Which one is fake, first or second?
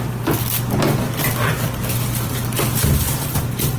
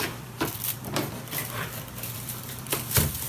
second